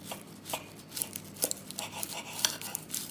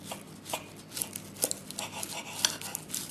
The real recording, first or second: second